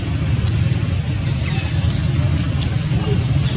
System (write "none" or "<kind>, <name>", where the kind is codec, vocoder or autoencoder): none